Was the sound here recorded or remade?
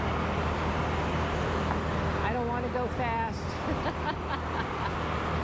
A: recorded